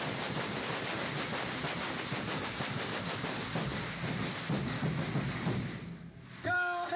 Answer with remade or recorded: recorded